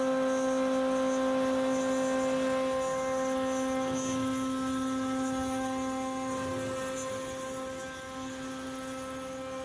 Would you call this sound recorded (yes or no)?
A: yes